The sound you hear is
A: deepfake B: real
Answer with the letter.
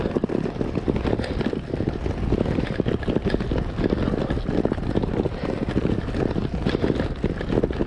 B